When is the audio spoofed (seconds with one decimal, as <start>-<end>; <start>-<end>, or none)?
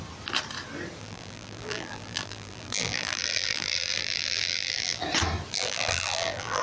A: 1.0-5.0; 5.5-6.6